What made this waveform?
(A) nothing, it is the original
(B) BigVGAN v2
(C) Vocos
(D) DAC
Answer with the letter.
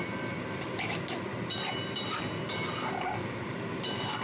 B